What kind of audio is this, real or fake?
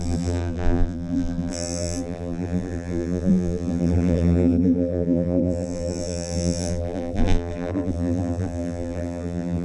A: fake